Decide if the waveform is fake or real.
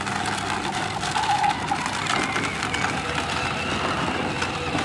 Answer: real